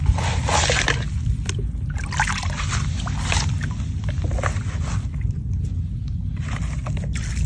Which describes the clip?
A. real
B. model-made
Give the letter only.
A